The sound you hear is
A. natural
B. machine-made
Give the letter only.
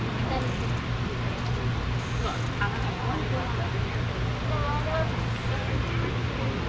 A